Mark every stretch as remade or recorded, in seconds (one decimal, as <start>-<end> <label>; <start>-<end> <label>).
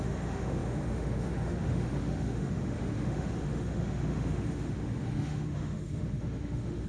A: 0.0-6.9 remade